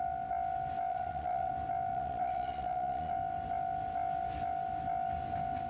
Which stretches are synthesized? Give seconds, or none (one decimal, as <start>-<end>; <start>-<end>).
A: 0.9-1.5; 1.9-3.1